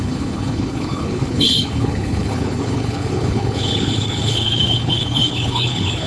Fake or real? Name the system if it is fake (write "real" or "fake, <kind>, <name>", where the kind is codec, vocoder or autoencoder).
fake, codec, HILCodec